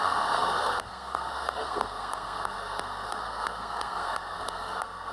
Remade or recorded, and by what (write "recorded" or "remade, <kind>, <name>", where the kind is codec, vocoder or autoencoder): remade, codec, SNAC